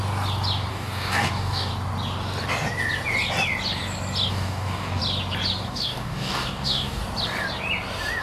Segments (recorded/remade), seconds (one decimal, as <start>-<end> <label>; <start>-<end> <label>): 0.0-0.7 recorded; 0.7-1.7 remade; 1.7-4.3 recorded; 4.3-5.0 remade; 5.0-5.6 recorded; 5.6-7.0 remade; 7.0-8.2 recorded